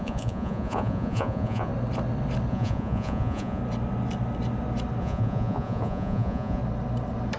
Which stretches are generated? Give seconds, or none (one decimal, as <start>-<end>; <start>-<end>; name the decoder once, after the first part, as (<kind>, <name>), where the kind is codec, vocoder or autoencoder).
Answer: 0.0-1.7 (vocoder, Vocos); 2.5-3.6; 5.0-6.6